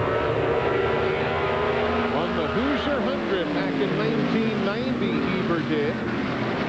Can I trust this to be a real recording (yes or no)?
yes